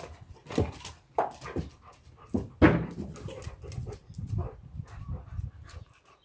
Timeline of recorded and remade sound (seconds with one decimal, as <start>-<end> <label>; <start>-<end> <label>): 0.0-6.2 recorded